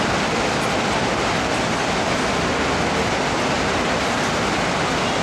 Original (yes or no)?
yes